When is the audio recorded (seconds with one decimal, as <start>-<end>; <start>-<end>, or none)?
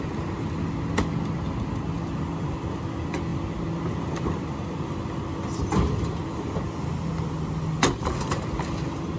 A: 0.0-9.2